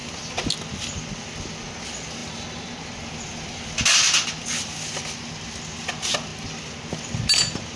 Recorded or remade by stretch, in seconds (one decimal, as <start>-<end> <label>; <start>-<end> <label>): 0.0-7.8 recorded